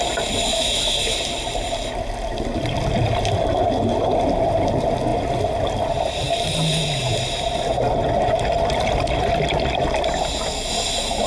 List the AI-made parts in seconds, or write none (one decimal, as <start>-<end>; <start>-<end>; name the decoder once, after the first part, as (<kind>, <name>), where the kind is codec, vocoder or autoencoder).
0.5-1.2 (autoencoder, DAC-VAE)